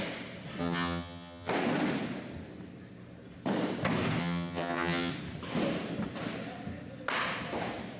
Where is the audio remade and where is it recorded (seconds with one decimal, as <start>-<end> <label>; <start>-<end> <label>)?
0.0-0.6 recorded; 0.6-1.5 remade; 1.5-4.2 recorded; 4.2-5.1 remade; 5.1-8.0 recorded